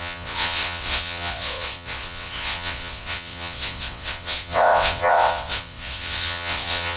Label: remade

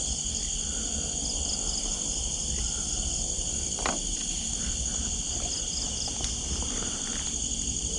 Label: recorded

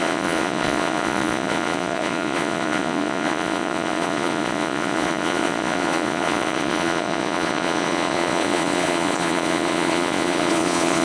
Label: remade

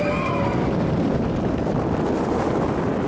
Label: recorded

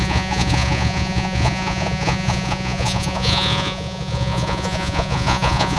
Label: remade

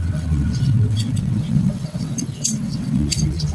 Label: remade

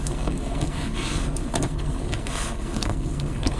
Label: remade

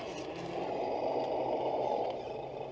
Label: recorded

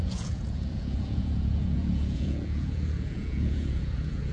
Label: remade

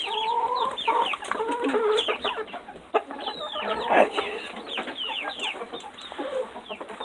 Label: recorded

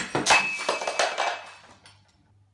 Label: recorded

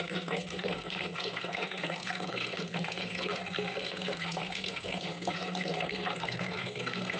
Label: remade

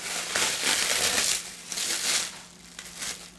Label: recorded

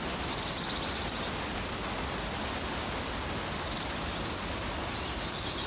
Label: recorded